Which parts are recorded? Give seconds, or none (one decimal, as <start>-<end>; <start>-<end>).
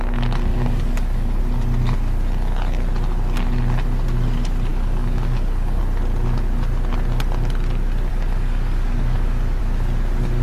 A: 0.0-0.5; 1.4-4.7; 5.8-8.1; 9.6-10.4